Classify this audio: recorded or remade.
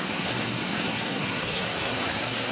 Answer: remade